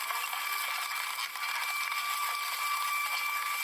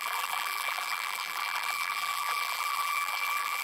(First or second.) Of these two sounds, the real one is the first